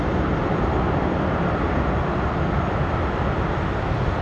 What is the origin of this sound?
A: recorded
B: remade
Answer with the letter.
A